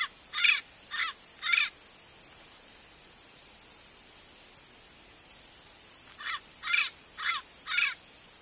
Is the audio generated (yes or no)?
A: no